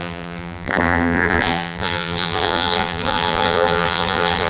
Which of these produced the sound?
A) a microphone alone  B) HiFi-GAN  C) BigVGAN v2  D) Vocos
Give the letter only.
C